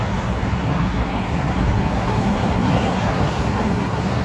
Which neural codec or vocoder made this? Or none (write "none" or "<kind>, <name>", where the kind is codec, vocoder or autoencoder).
codec, SNAC